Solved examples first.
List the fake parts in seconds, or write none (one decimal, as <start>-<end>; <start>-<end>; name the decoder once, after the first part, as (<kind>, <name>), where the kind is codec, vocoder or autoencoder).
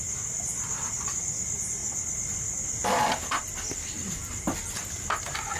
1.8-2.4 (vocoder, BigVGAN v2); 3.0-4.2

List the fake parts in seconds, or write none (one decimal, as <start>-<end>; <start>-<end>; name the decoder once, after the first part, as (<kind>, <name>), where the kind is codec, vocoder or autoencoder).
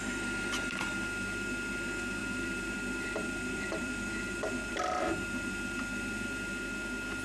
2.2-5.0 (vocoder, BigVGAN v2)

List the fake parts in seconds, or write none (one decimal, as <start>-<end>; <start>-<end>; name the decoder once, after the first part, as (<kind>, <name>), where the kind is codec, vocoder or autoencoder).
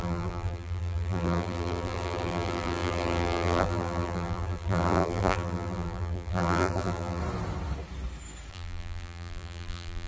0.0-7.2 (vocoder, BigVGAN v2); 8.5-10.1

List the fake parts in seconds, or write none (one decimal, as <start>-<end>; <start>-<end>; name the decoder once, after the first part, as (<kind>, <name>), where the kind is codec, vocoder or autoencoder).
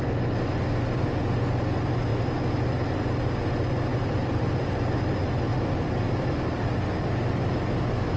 3.9-4.4 (vocoder, BigVGAN v2); 5.5-6.6